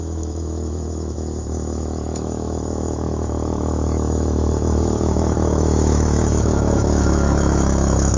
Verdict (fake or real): fake